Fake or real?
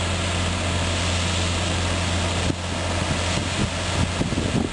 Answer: real